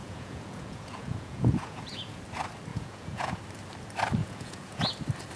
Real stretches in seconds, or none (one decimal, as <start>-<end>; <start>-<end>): 2.2-2.7; 3.4-4.2; 4.8-5.4